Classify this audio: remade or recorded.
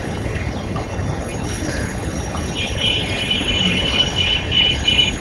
remade